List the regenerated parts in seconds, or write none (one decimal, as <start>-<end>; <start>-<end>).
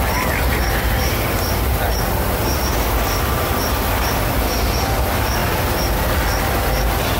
none